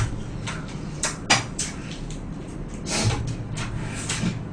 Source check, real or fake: real